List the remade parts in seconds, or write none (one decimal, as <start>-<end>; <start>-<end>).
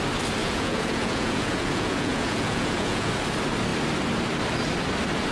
0.4-3.1